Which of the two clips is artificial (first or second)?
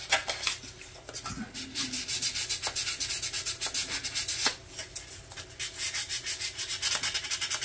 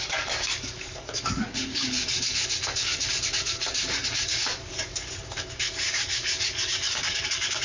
second